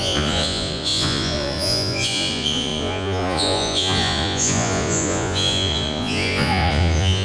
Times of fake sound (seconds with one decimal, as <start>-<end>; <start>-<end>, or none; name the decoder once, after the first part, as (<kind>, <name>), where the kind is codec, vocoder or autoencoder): 0.0-7.2 (vocoder, Vocos)